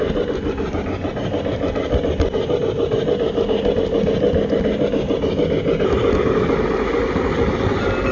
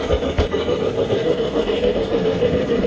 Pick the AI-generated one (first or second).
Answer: second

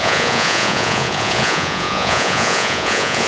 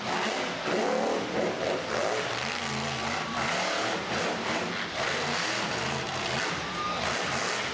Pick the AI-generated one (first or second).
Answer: first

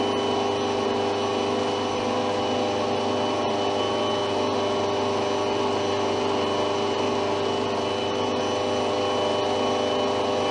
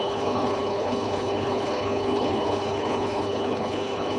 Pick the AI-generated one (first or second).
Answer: second